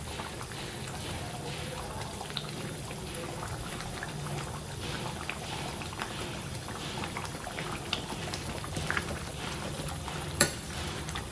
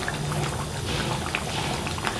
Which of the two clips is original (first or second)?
second